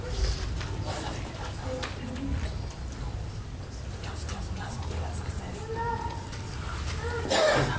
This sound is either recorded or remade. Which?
recorded